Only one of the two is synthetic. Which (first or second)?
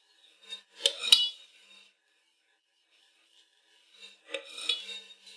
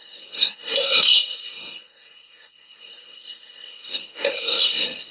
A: second